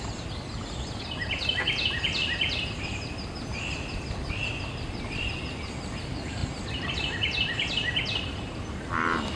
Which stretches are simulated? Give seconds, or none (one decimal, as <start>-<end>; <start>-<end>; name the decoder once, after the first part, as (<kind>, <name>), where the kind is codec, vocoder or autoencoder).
0.0-2.9 (vocoder, BigVGAN v2); 5.9-9.4